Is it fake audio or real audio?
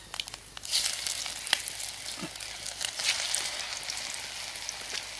real